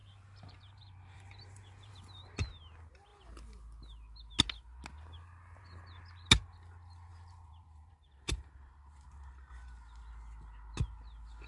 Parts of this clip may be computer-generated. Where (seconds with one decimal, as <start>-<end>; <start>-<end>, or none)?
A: 0.0-2.2; 7.1-9.5